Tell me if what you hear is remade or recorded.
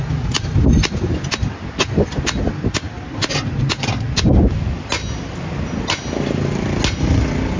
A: recorded